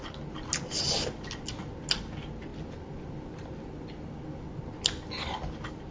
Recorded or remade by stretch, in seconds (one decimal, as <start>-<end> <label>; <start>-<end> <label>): 0.0-5.9 recorded